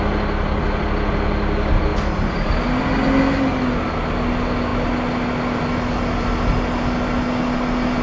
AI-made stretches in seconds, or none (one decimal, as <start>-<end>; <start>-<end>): none